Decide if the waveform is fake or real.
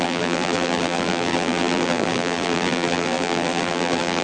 fake